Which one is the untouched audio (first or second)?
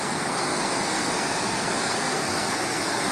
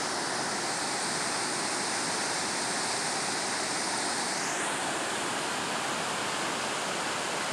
second